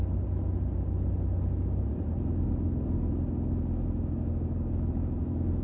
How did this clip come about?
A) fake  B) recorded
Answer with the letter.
B